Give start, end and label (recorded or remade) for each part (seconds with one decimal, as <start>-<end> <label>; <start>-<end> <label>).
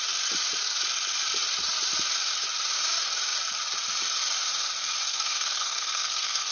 0.0-5.1 recorded; 5.1-6.5 remade